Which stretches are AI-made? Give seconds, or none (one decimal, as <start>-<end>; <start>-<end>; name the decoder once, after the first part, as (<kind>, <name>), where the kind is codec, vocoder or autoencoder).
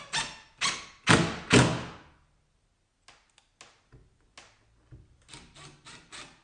none